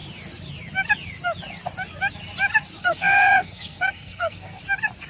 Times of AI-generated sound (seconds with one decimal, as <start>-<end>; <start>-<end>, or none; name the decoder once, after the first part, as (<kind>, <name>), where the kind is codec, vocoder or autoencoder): 2.8-4.6 (codec, SNAC)